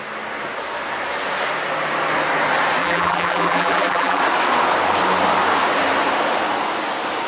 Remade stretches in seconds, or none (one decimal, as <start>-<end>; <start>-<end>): 2.8-4.2